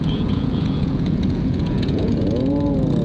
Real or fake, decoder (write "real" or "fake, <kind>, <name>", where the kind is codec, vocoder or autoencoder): fake, vocoder, Vocos